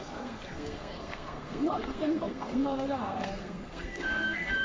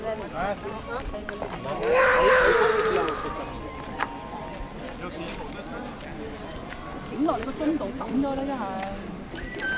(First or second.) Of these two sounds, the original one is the second